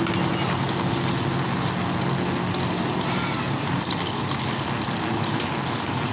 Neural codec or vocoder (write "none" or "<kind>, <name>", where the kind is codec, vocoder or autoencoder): none